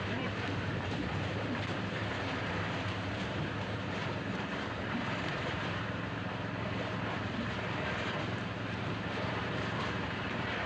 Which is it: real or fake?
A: fake